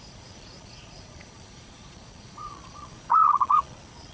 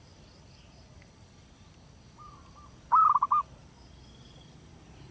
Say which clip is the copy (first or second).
first